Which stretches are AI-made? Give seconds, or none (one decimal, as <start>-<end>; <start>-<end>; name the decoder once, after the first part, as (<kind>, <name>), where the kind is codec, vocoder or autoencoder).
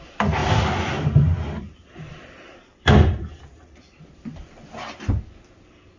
none